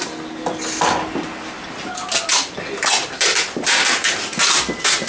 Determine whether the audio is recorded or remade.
recorded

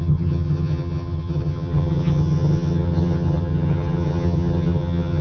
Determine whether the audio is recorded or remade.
remade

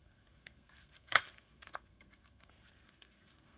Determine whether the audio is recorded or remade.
remade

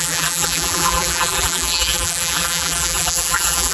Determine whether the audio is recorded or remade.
remade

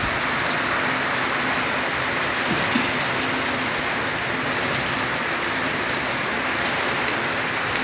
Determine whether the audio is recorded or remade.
recorded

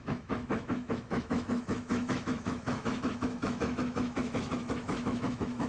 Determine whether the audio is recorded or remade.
remade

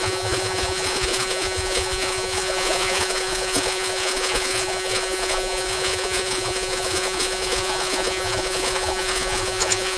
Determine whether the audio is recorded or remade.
remade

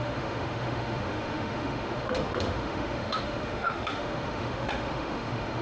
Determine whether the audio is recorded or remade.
remade